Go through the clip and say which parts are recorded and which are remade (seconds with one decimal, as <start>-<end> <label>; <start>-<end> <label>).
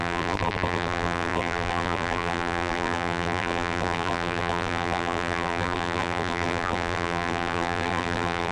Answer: 0.0-8.5 remade